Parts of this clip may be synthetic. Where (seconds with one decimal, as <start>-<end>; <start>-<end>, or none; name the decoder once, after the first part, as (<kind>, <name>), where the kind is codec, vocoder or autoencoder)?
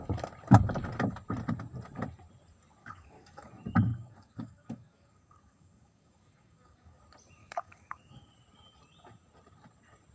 2.8-3.5 (codec, DAC); 3.9-7.0; 7.4-8.3